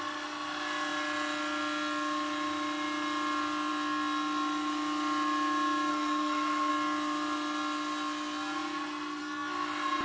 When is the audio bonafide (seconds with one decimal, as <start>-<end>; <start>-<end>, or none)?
0.0-5.9; 6.7-10.0